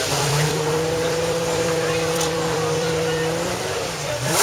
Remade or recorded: remade